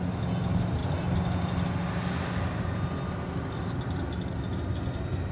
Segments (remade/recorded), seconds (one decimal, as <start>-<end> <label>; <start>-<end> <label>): 0.0-5.3 recorded